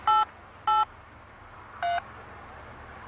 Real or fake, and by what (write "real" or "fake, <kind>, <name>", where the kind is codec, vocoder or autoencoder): real